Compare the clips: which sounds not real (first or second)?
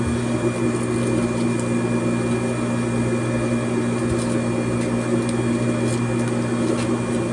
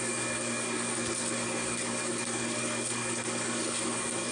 second